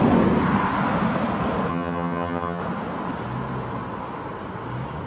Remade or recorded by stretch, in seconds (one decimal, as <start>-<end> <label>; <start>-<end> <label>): 0.0-1.7 recorded; 1.7-2.6 remade; 2.6-5.1 recorded